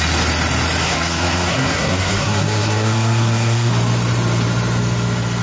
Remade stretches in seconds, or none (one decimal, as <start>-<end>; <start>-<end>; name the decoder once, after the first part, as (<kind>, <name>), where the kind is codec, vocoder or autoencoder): 0.8-3.7 (codec, SNAC)